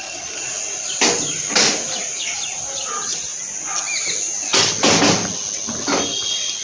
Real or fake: real